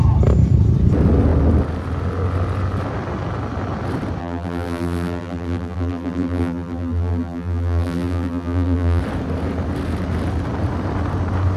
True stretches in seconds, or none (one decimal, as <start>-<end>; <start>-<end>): 0.0-4.2; 9.0-11.6